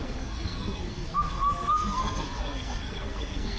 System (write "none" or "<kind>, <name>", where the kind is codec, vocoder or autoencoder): codec, SNAC